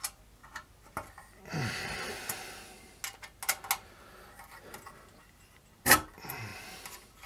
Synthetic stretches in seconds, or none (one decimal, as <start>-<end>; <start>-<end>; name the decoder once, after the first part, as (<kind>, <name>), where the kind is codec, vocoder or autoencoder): none